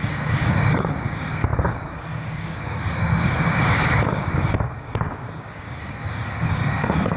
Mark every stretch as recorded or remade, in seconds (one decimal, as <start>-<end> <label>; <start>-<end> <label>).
0.0-7.2 remade